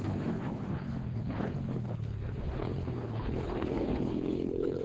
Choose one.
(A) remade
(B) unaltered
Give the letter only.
A